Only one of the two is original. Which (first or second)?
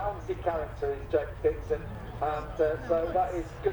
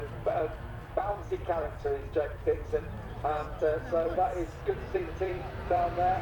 first